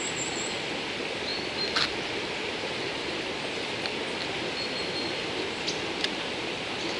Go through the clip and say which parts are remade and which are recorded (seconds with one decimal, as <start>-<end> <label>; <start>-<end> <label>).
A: 0.0-7.0 recorded